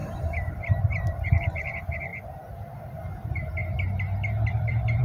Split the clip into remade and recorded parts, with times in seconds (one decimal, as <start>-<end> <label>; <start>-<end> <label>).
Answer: 0.0-2.1 remade; 2.1-2.8 recorded; 2.8-3.6 remade; 3.6-4.5 recorded; 4.5-5.0 remade